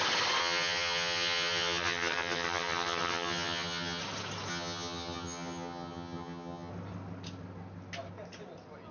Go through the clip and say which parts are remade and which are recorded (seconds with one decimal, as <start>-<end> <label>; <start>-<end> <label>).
0.0-0.4 recorded; 0.4-4.0 remade; 4.0-4.5 recorded; 4.5-6.7 remade; 6.7-8.9 recorded